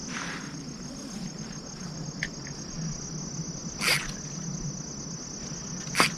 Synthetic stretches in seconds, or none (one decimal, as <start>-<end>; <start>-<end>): none